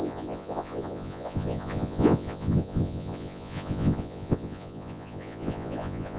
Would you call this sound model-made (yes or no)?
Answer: yes